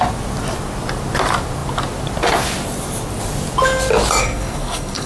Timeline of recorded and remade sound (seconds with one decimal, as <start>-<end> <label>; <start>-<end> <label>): 0.0-4.2 recorded; 4.2-5.1 remade